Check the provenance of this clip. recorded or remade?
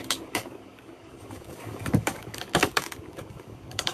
remade